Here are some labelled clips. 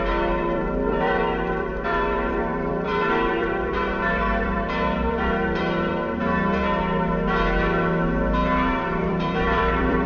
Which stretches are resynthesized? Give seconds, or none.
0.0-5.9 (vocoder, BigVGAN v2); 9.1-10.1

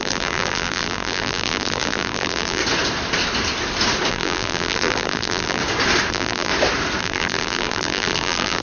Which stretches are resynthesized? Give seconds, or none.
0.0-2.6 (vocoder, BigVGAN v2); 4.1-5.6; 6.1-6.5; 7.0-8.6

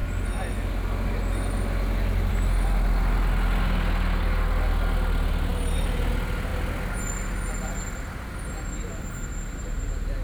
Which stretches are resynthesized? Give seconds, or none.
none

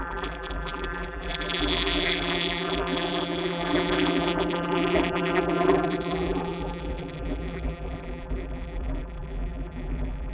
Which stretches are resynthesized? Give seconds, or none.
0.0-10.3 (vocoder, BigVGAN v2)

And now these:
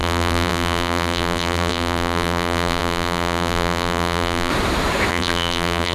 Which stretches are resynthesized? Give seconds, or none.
0.0-4.5 (vocoder, BigVGAN v2); 5.1-5.9

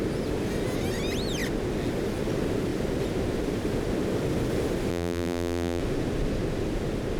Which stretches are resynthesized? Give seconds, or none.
4.9-5.8 (vocoder, BigVGAN v2)

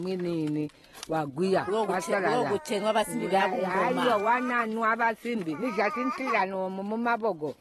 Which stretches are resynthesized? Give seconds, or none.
3.2-6.4 (vocoder, BigVGAN v2)

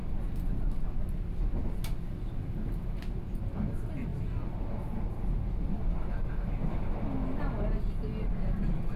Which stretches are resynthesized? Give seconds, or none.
none